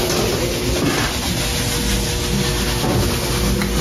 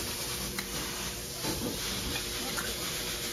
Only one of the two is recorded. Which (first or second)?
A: first